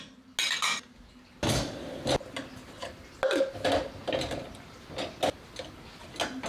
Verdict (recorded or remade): recorded